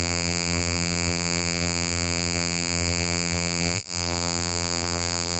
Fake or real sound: fake